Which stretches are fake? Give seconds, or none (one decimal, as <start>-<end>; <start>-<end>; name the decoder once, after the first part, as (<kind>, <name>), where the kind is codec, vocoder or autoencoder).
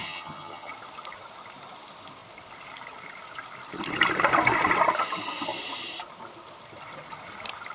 0.0-0.7 (vocoder, HiFi-GAN)